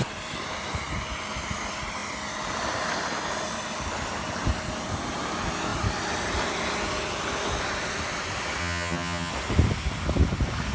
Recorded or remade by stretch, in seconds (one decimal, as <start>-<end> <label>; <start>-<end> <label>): 0.0-8.6 recorded; 8.6-9.3 remade; 9.3-10.7 recorded